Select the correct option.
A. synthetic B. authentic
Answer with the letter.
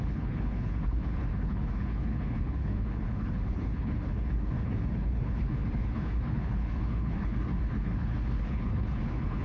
A